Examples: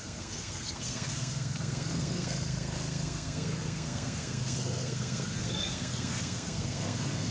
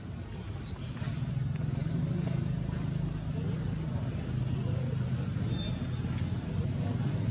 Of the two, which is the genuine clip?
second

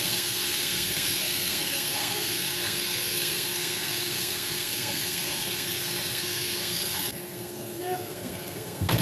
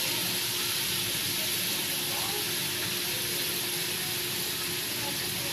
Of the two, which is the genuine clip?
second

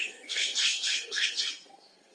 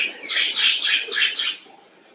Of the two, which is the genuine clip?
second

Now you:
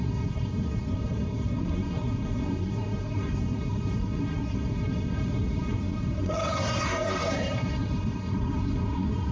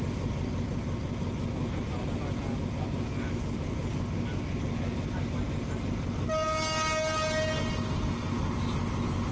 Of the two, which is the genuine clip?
second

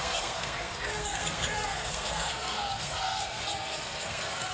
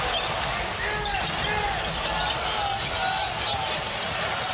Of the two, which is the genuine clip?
second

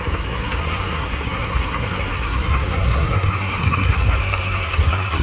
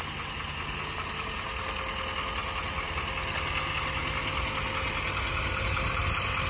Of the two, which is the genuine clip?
second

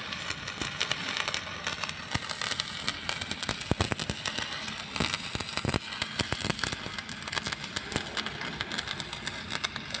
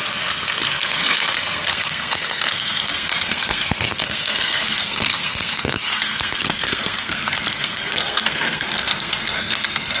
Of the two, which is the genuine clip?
first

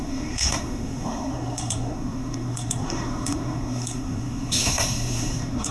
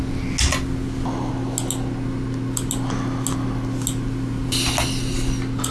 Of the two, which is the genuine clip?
second